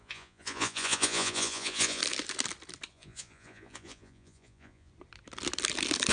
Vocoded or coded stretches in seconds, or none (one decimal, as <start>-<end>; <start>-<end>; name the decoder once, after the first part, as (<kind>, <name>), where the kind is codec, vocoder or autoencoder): 0.0-2.0 (vocoder, Vocos); 2.9-4.9